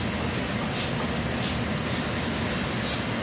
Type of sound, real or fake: real